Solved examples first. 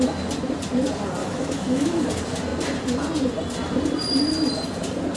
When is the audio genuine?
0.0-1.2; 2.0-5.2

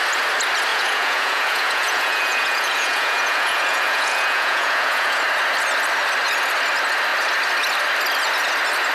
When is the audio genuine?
0.0-0.7; 5.2-8.9

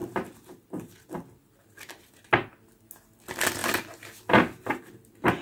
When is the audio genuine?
0.0-5.4

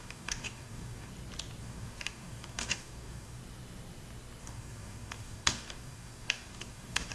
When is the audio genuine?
1.1-1.6; 3.4-4.4

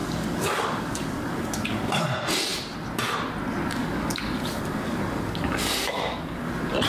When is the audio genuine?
2.0-3.8; 6.5-6.9

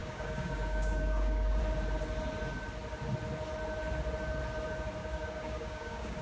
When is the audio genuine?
1.6-5.0